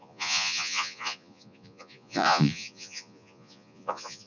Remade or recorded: remade